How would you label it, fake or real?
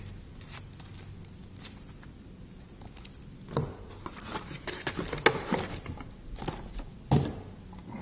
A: real